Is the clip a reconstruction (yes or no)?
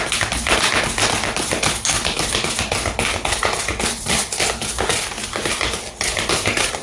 no